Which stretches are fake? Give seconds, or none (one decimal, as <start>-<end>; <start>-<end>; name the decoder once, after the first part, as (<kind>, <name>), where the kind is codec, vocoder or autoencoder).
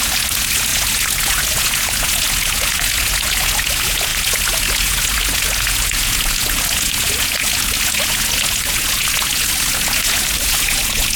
0.0-11.2 (vocoder, Vocos)